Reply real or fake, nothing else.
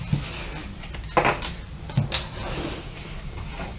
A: real